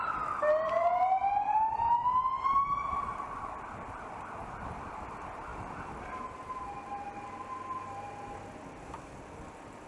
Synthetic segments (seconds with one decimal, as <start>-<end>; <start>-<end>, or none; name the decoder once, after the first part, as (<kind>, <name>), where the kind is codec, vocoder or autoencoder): none